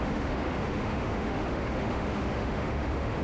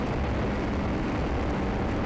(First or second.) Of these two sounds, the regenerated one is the first